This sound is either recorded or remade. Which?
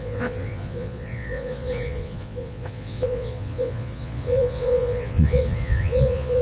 remade